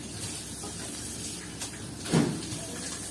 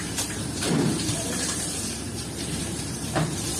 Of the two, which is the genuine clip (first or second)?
first